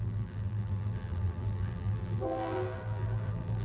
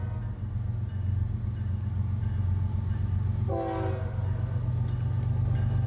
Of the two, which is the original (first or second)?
second